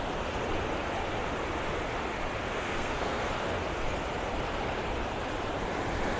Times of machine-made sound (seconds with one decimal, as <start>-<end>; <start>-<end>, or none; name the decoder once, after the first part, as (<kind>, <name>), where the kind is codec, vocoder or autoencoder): 2.4-3.3 (codec, SNAC)